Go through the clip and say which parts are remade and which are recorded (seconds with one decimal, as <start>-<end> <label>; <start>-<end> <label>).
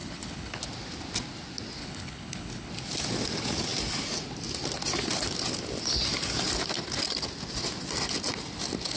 0.0-0.6 remade; 0.6-1.8 recorded; 1.8-2.7 remade; 2.7-9.0 recorded